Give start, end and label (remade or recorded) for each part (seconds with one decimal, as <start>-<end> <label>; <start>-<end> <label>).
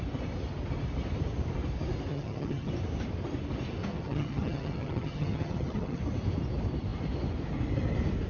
0.0-2.1 recorded; 2.1-2.7 remade; 2.7-3.9 recorded; 3.9-6.0 remade; 6.0-8.3 recorded